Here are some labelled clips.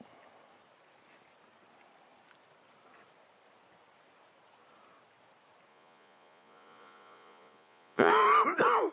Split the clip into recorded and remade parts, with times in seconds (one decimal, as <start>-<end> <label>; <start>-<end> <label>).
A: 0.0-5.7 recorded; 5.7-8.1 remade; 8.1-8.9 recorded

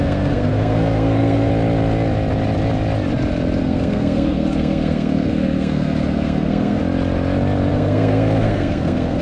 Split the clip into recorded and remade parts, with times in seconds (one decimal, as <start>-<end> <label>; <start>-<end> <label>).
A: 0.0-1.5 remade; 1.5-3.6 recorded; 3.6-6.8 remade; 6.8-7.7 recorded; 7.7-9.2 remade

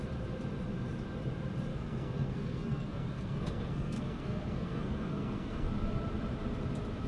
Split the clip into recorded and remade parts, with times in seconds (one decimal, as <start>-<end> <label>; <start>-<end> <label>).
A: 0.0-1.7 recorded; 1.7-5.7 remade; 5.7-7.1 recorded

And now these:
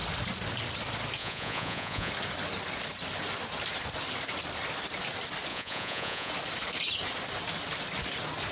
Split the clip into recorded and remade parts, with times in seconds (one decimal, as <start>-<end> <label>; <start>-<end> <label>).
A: 0.0-1.2 recorded; 1.2-2.1 remade; 2.1-5.5 recorded; 5.5-6.3 remade; 6.3-8.5 recorded